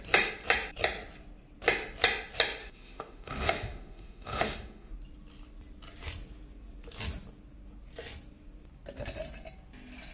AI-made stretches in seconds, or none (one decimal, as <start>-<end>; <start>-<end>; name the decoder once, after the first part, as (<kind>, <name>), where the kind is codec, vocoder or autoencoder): 2.6-4.9 (autoencoder, DAC-VAE)